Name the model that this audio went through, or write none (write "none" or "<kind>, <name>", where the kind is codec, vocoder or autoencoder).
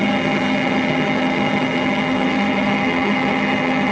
vocoder, HiFi-GAN